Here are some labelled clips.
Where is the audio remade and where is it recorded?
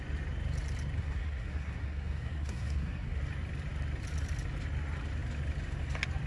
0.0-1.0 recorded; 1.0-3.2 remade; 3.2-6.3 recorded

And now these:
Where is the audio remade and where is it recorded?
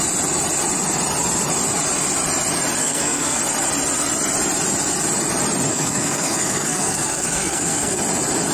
0.0-2.8 recorded; 2.8-3.4 remade; 3.4-5.7 recorded; 5.7-8.0 remade; 8.0-8.5 recorded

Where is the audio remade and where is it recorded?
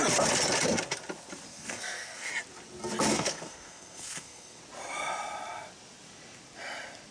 0.0-1.5 recorded; 1.5-2.3 remade; 2.3-3.1 recorded; 3.1-4.6 remade; 4.6-7.1 recorded